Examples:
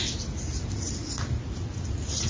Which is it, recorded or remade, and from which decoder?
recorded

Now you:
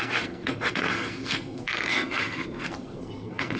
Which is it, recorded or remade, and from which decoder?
remade, codec, SNAC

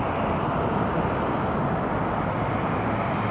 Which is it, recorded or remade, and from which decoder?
recorded